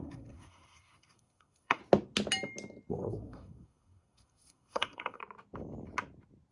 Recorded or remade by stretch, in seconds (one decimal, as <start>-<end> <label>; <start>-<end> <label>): 0.0-1.8 remade; 1.8-2.9 recorded; 2.9-5.2 remade; 5.2-6.5 recorded